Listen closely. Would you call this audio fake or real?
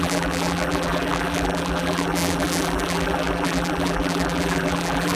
fake